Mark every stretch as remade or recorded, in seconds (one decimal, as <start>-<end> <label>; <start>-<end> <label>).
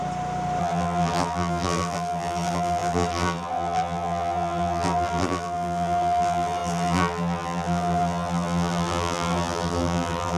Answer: 0.0-0.6 recorded; 0.6-10.4 remade